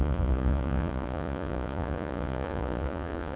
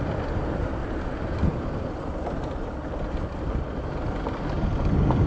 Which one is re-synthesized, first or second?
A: first